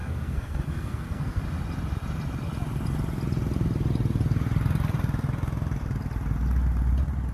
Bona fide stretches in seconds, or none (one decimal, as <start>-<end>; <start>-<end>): 1.4-7.3